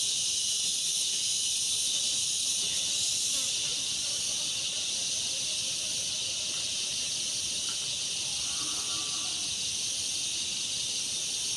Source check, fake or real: real